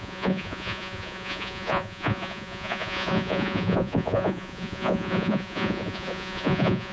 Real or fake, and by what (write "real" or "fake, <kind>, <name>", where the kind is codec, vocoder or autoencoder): fake, vocoder, Vocos